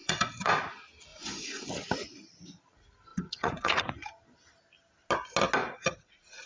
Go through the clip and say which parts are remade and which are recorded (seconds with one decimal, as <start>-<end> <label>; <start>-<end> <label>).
0.0-0.6 remade; 0.6-1.1 recorded; 1.1-1.7 remade; 1.7-3.1 recorded; 3.1-3.8 remade; 3.8-5.6 recorded; 5.6-6.5 remade